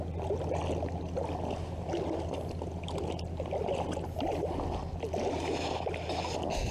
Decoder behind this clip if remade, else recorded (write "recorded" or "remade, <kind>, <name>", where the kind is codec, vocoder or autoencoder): recorded